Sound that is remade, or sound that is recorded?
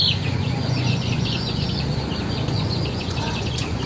remade